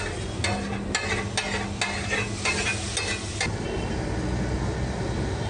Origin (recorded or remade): recorded